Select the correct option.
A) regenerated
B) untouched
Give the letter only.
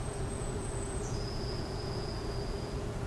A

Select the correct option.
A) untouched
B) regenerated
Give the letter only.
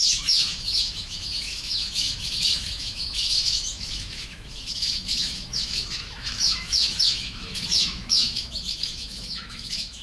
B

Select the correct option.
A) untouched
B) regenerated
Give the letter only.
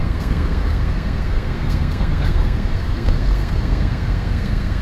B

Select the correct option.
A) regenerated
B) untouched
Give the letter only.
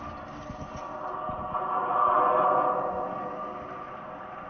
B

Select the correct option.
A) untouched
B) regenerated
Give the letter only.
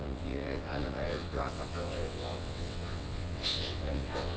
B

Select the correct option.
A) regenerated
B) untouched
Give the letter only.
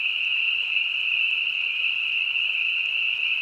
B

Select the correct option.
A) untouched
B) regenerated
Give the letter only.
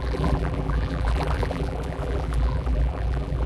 B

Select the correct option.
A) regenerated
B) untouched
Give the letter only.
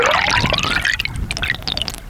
B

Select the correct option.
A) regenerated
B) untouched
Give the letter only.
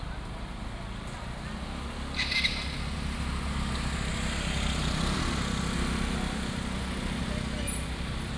B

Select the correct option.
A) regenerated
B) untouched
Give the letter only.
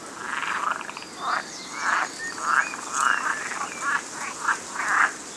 B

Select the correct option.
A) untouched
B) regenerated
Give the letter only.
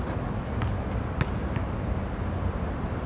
A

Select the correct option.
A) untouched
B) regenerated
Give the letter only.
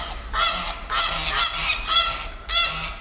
A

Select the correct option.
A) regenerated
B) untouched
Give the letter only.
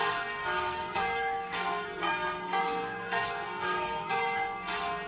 A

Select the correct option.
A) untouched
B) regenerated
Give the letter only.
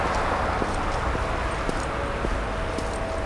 A